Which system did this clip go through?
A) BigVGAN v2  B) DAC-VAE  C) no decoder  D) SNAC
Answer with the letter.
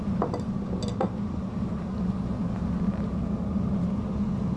C